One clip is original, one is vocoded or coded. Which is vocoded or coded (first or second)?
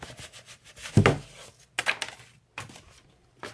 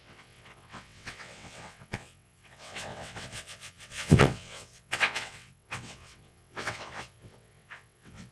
second